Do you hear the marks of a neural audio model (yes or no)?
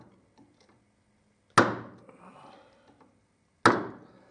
no